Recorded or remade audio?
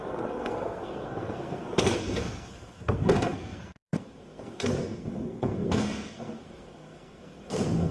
remade